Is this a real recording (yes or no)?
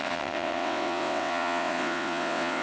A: no